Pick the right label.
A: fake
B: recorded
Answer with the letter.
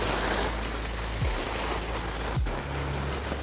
B